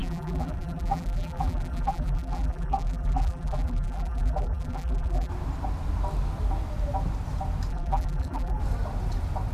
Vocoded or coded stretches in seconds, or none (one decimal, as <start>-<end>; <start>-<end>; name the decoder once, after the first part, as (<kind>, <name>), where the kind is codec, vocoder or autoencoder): 0.0-5.3 (vocoder, BigVGAN v2); 7.7-8.6